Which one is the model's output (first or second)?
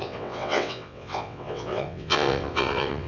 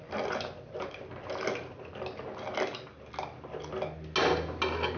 first